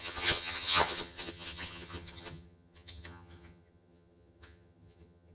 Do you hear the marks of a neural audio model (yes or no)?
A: yes